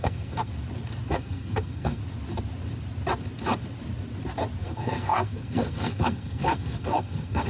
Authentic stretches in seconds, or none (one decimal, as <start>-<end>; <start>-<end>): 0.5-1.1; 2.0-4.6